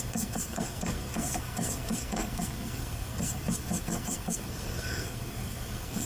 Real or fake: fake